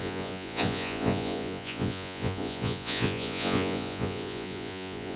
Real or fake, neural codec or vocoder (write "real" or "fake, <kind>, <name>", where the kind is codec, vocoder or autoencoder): fake, vocoder, Vocos